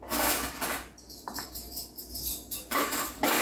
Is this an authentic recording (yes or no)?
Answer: no